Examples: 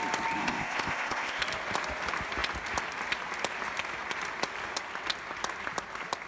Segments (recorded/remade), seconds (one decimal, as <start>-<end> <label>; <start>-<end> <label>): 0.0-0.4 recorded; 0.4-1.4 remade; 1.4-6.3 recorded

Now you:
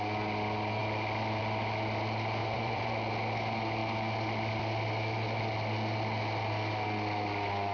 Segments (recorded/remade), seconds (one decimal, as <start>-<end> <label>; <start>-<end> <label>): 0.0-2.4 recorded; 2.4-3.1 remade; 3.1-7.7 recorded

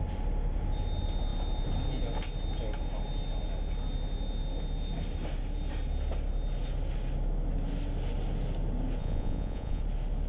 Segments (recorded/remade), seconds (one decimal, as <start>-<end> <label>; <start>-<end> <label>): 0.0-9.0 recorded; 9.0-9.8 remade; 9.8-10.3 recorded

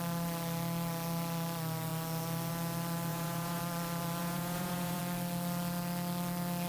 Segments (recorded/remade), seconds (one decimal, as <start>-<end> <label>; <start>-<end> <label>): 0.0-3.1 recorded; 3.1-3.6 remade; 3.6-4.2 recorded; 4.2-5.0 remade; 5.0-6.7 recorded